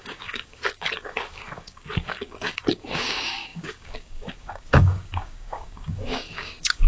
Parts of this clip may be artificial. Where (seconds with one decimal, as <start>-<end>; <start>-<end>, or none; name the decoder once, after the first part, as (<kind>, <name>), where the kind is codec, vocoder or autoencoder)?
0.0-6.9 (codec, DAC)